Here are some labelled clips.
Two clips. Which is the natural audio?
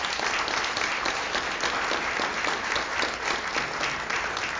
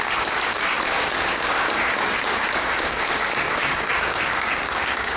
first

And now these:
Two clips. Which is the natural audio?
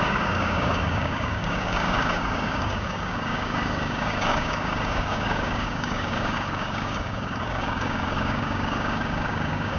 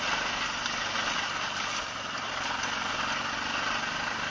second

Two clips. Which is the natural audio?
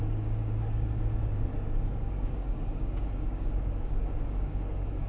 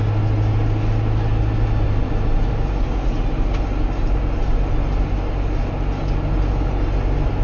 second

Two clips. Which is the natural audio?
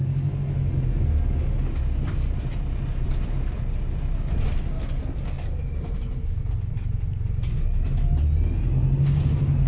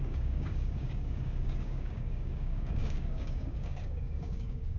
first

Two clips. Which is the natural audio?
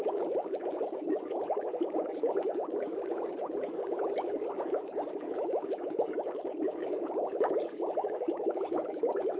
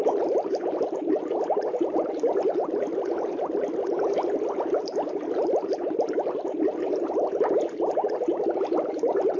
second